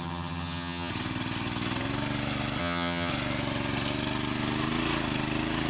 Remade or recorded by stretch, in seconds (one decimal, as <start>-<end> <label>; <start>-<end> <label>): 0.0-0.9 remade; 0.9-2.6 recorded; 2.6-3.1 remade; 3.1-5.7 recorded